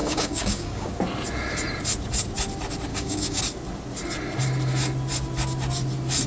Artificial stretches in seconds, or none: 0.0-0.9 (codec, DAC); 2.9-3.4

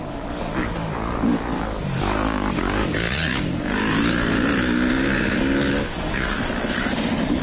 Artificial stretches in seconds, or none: 0.0-3.8 (codec, DAC); 5.7-7.4

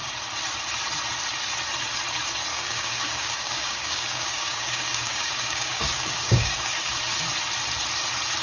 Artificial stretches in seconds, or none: 2.5-6.9 (codec, DAC)

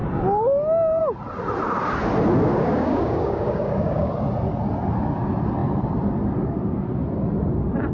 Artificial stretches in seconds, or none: 2.5-4.1 (codec, DAC)

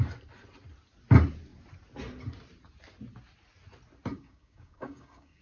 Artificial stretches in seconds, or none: 4.1-5.4 (codec, DAC)

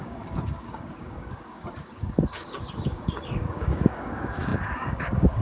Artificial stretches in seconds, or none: 0.0-5.4 (codec, DAC)

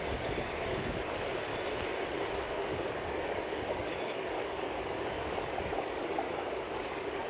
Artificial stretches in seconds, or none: 0.0-1.5 (codec, DAC); 2.4-7.3

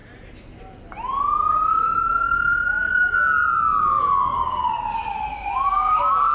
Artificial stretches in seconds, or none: 1.7-3.4 (codec, DAC); 4.0-6.3